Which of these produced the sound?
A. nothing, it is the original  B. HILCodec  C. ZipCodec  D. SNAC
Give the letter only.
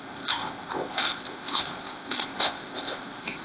C